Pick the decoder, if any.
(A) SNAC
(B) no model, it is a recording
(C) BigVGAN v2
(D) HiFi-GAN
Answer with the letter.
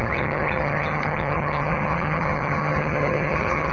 D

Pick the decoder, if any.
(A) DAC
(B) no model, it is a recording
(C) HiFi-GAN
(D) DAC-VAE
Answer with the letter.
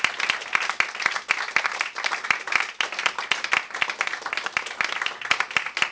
B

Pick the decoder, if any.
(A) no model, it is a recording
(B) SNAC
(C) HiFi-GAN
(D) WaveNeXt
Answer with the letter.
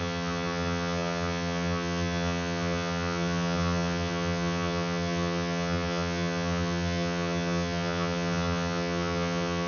C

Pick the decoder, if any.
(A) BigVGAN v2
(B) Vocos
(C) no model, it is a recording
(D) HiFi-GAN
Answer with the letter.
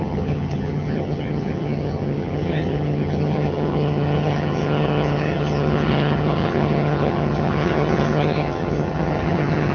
D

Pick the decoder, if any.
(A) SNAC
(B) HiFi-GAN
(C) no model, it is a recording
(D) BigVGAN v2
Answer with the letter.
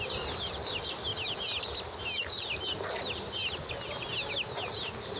C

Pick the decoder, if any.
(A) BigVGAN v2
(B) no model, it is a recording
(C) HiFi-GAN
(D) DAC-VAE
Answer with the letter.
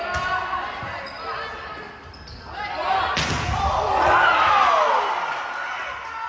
B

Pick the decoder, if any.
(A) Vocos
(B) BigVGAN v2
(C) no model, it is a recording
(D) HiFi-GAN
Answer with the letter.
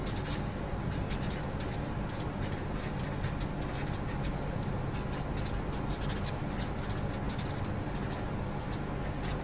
C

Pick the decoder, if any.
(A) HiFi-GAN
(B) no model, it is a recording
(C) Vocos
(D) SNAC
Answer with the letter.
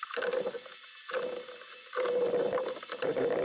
B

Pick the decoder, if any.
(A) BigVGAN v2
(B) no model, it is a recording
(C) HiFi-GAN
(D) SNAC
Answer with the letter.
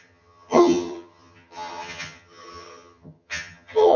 C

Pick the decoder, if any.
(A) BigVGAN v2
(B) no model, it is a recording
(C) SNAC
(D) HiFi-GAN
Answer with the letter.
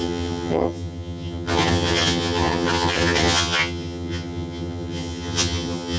D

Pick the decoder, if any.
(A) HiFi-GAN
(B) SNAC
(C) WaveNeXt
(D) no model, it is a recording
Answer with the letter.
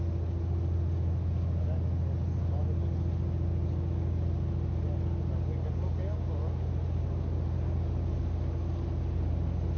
D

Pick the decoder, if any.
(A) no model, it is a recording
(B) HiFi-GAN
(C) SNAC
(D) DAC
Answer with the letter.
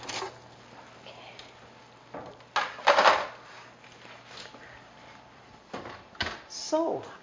A